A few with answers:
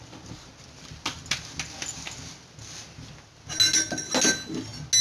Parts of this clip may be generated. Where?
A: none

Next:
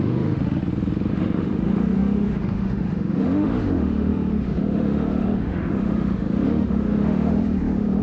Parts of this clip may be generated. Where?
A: 0.0-0.6 (autoencoder, DAC-VAE); 1.1-8.0

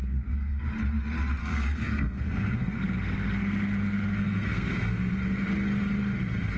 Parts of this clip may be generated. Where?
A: 0.0-0.6 (codec, SNAC); 1.4-5.1

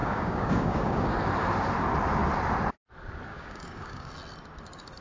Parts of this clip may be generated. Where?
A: 0.0-1.2 (codec, DAC); 3.3-4.1

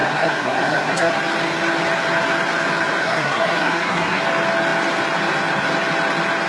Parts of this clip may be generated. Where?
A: 0.0-1.1 (codec, SNAC); 3.0-4.2

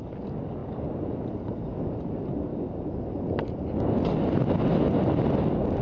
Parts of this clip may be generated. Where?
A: none

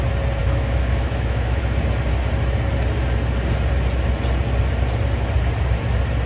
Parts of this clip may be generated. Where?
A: 0.4-1.6 (autoencoder, DAC-VAE)